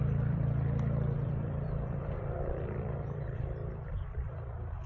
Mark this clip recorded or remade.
remade